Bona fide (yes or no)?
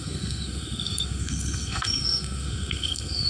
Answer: no